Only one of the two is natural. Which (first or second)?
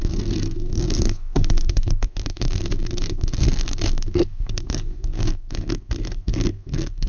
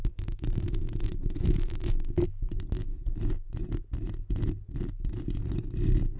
second